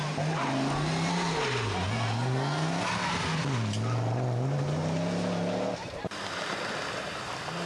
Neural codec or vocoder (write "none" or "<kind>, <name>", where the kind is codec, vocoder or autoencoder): none